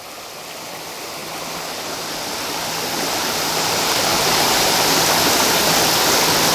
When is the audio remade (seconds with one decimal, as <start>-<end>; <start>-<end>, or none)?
4.1-4.7